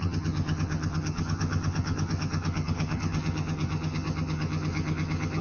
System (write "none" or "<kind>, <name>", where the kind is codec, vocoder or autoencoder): vocoder, HiFi-GAN